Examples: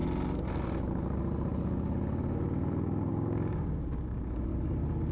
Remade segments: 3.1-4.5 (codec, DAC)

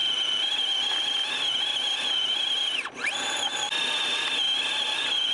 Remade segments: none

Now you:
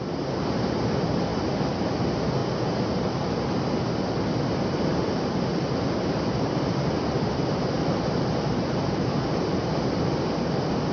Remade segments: 1.3-1.9 (vocoder, BigVGAN v2); 4.9-10.1